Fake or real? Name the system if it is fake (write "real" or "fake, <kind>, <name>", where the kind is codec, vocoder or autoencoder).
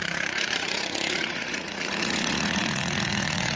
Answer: fake, vocoder, Vocos